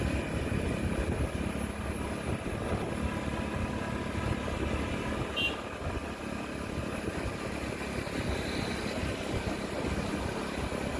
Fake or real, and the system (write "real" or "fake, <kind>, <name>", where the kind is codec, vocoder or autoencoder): real